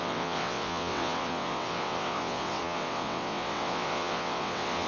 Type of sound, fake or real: fake